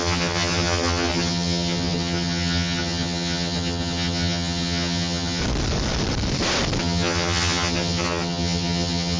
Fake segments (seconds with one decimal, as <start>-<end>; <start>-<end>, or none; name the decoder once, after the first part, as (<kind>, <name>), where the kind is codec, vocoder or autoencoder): 0.0-5.4 (vocoder, HiFi-GAN); 6.8-9.2